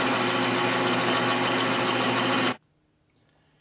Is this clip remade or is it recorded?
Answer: recorded